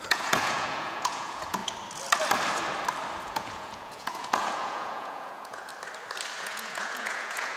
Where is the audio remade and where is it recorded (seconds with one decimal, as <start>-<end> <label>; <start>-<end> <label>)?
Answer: 0.0-1.6 remade; 1.6-3.2 recorded; 3.2-5.7 remade; 5.7-6.4 recorded; 6.4-7.6 remade